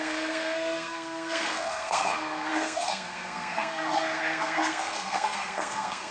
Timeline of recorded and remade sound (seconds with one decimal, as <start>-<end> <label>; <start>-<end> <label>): 0.0-6.1 remade